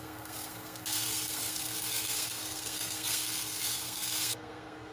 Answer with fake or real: fake